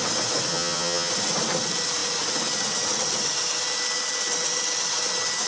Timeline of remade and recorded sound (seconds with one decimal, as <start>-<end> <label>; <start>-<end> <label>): 0.0-0.5 recorded; 0.5-1.1 remade; 1.1-5.5 recorded